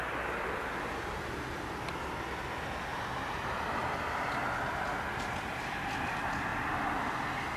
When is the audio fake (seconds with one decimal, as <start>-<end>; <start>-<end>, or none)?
none